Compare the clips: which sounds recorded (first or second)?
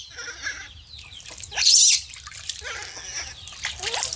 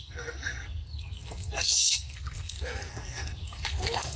first